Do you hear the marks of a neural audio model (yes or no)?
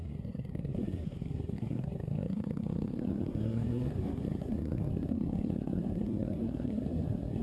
yes